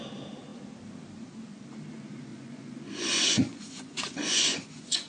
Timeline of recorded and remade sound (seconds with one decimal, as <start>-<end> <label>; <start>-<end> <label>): 0.0-2.3 recorded; 2.3-5.1 remade